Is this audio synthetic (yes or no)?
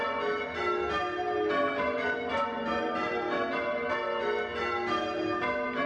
no